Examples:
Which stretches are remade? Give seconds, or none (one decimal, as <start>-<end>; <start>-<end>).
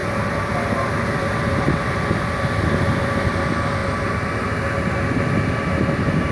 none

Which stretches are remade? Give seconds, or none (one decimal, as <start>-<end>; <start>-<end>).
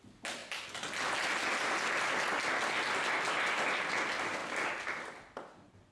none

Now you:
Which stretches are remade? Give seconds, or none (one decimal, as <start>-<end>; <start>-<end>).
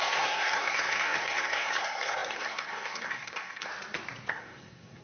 0.0-3.7; 4.3-5.0